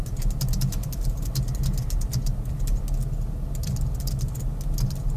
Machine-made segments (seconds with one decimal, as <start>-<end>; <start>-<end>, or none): none